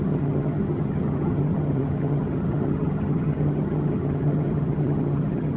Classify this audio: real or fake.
fake